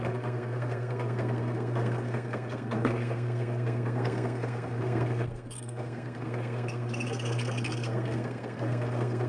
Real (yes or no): no